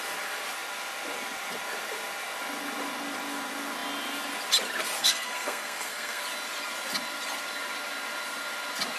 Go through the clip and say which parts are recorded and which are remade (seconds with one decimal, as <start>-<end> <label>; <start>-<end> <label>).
0.0-5.0 recorded; 5.0-6.2 remade; 6.2-9.0 recorded